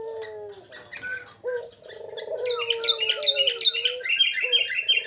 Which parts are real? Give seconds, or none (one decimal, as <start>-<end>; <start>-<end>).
0.0-5.1